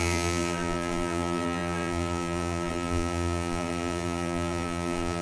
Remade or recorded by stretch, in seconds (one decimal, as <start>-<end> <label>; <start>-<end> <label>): 0.0-5.2 remade